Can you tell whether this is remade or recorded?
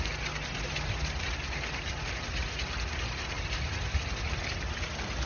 recorded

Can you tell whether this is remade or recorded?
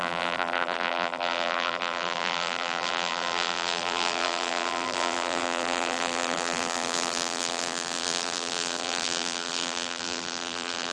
remade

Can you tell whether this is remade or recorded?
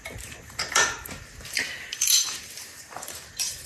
remade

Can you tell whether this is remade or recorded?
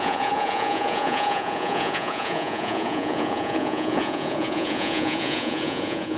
remade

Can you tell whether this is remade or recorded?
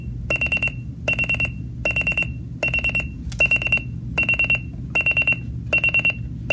recorded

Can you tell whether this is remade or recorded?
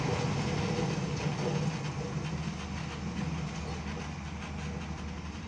recorded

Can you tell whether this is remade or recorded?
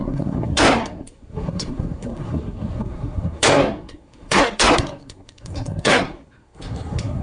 remade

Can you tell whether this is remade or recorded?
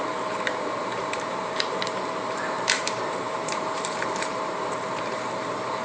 remade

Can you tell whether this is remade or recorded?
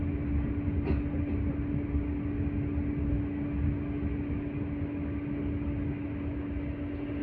recorded